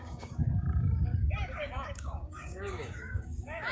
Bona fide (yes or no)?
no